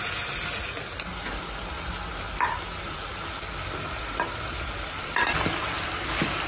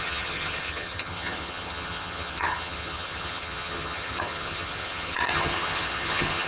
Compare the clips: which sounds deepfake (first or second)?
second